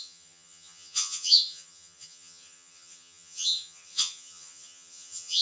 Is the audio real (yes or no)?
no